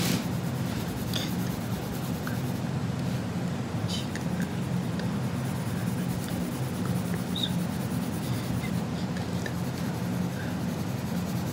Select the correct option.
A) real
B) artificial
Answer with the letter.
A